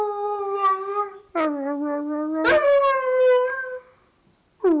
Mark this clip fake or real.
real